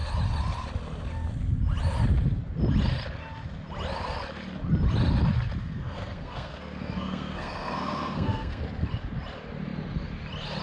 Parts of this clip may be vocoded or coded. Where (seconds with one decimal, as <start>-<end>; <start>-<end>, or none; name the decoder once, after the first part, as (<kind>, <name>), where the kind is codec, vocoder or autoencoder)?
5.6-8.6 (codec, SNAC)